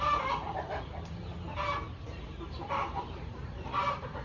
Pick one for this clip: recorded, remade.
remade